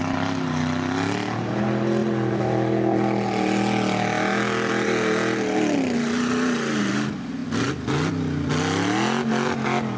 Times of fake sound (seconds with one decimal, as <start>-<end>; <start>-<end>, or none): none

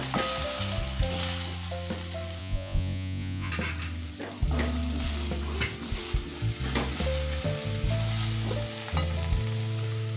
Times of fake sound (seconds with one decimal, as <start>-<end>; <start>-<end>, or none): 2.4-3.5

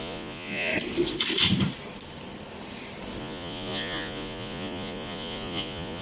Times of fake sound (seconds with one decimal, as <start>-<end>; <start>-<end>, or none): 0.0-0.7; 3.2-6.0

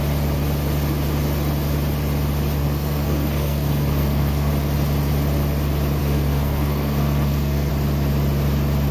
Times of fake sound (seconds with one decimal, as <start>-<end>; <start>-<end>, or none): 2.6-4.5; 6.0-7.7

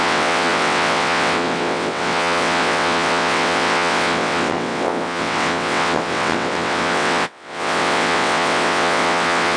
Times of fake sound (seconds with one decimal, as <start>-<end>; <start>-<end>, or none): 0.0-9.6